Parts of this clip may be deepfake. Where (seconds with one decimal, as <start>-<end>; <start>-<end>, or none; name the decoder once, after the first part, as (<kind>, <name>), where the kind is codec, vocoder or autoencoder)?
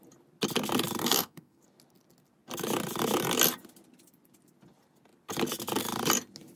1.0-1.6 (codec, SNAC)